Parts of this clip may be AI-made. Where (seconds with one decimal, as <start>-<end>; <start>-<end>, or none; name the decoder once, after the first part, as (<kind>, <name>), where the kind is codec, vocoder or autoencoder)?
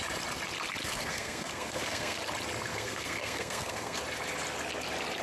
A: 0.8-2.2 (codec, SNAC); 2.7-4.0